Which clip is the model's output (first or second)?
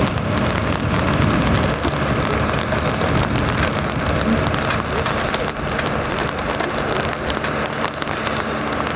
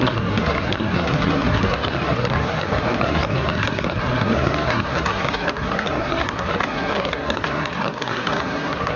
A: second